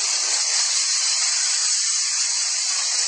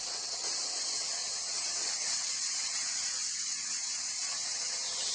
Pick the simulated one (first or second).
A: second